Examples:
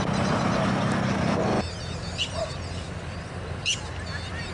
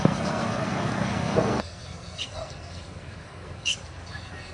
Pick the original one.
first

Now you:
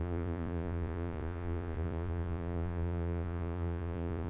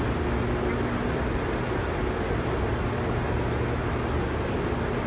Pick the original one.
second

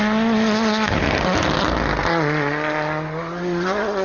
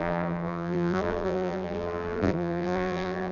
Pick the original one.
first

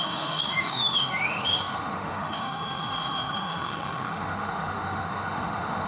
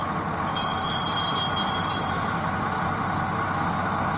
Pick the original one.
second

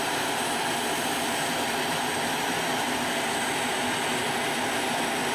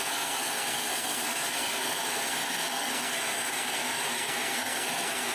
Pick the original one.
first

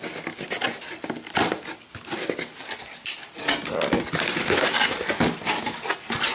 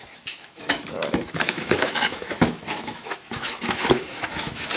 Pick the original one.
first